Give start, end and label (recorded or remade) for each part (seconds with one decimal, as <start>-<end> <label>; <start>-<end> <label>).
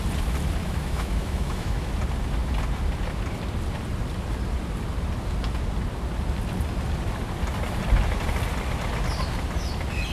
0.0-0.6 recorded; 0.6-1.9 remade; 1.9-10.1 recorded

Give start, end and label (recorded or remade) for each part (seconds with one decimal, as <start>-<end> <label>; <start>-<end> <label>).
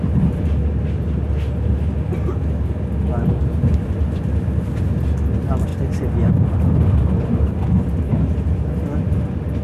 0.0-9.6 recorded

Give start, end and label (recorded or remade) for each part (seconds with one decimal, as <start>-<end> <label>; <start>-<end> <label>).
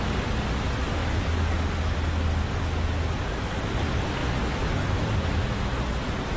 0.0-4.2 recorded; 4.2-5.0 remade; 5.0-6.4 recorded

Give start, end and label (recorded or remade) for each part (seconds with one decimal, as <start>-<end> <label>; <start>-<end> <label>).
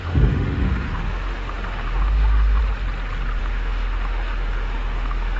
0.0-2.6 remade; 2.6-3.4 recorded; 3.4-5.4 remade